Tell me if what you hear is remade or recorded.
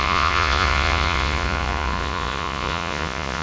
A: remade